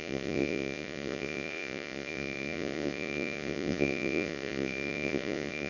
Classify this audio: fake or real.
fake